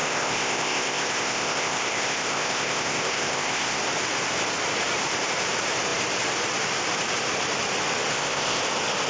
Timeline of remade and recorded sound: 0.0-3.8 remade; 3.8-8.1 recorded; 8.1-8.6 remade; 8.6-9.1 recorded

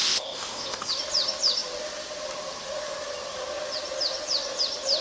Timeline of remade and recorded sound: 0.0-0.9 remade; 0.9-5.0 recorded

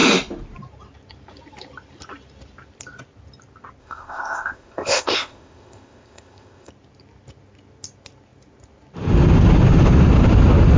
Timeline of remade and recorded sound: 0.0-3.8 recorded; 3.8-6.7 remade; 6.7-10.8 recorded

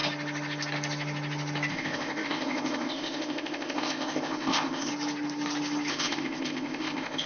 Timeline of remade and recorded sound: 0.0-1.7 recorded; 1.7-4.9 remade; 4.9-5.9 recorded; 5.9-7.3 remade

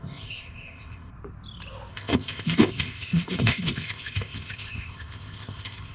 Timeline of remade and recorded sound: 0.0-1.1 remade; 1.1-1.9 recorded; 1.9-5.9 remade

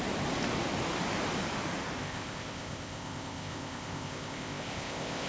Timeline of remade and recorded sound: 0.0-2.0 recorded; 2.0-5.3 remade